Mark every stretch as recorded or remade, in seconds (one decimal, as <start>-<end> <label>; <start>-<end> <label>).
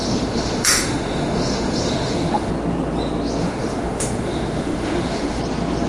0.0-2.5 remade; 2.5-3.4 recorded; 3.4-5.4 remade; 5.4-5.9 recorded